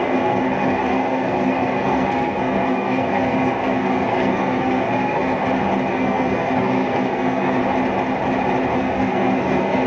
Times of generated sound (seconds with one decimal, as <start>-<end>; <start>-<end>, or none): 0.0-5.4; 5.9-7.6; 8.7-9.9